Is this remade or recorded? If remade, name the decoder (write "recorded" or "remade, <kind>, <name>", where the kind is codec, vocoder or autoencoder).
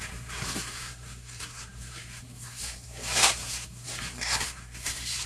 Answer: remade, codec, SNAC